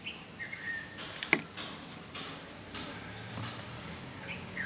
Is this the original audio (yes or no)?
yes